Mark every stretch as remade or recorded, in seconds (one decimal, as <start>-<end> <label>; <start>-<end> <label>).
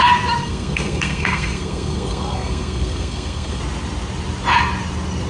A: 0.0-0.4 recorded; 0.4-3.6 remade; 3.6-5.3 recorded